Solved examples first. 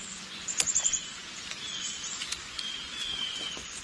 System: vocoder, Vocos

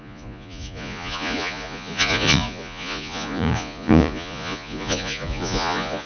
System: vocoder, Vocos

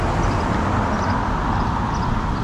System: none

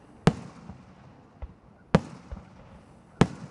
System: none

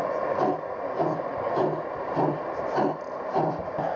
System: none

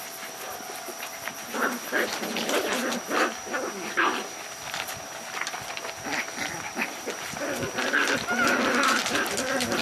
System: vocoder, BigVGAN v2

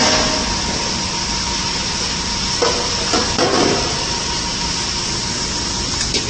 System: none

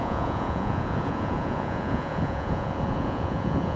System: vocoder, Vocos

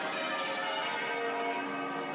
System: none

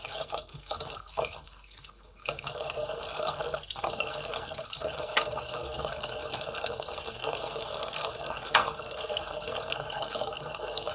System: codec, SNAC